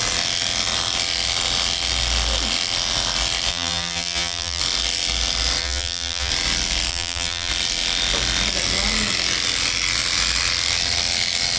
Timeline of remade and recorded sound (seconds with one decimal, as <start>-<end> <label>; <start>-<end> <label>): 0.0-3.5 recorded; 3.5-4.6 remade; 4.6-5.6 recorded; 5.6-6.3 remade; 6.3-6.9 recorded; 6.9-7.5 remade; 7.5-11.6 recorded